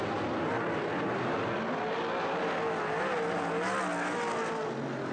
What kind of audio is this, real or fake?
real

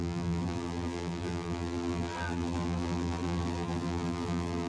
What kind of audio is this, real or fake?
fake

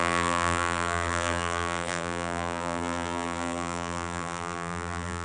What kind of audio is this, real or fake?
fake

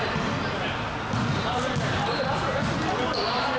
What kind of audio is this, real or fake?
real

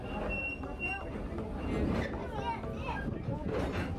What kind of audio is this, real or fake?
real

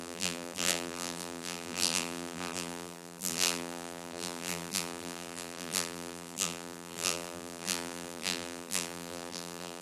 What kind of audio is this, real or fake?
fake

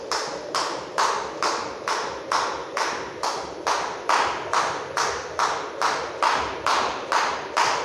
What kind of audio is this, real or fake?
real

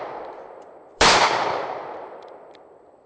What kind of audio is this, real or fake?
fake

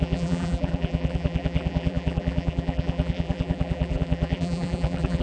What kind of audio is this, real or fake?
fake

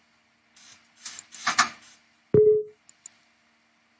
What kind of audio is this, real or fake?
real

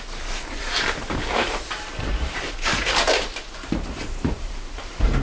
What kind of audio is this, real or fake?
fake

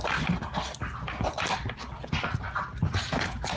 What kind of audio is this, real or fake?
real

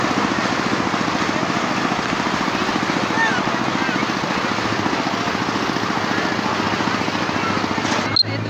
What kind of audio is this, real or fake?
real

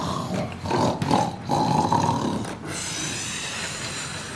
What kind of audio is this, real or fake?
real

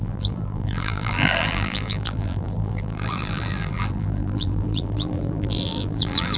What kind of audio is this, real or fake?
fake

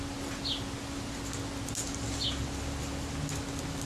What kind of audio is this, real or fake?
real